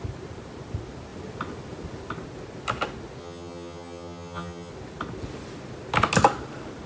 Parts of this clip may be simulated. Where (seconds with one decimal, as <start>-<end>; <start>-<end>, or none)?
3.2-4.7